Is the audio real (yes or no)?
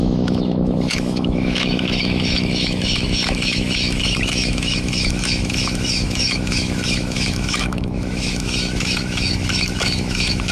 no